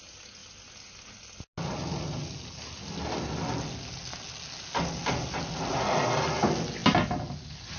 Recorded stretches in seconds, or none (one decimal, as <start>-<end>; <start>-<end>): 0.0-7.8